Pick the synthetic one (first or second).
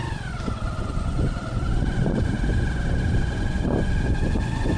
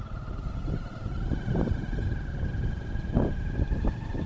first